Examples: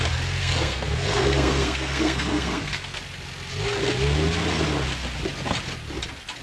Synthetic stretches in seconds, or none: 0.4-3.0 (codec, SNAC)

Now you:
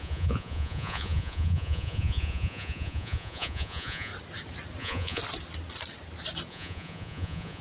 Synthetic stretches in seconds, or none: 0.0-4.1 (vocoder, Vocos); 4.8-5.2; 6.5-7.6

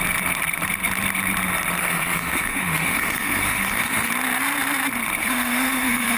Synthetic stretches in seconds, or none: 1.8-4.1 (autoencoder, DAC-VAE); 5.2-6.2

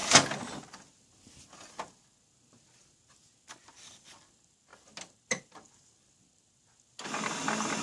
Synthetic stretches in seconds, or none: none

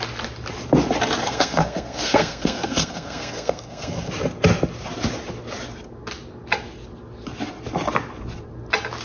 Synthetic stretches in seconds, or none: 1.2-4.1 (codec, SNAC)